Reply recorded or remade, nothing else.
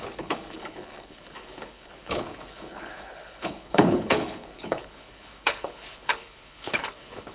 remade